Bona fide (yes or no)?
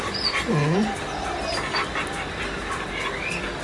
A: yes